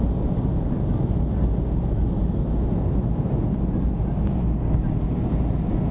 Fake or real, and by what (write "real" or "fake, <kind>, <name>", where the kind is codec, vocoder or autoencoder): real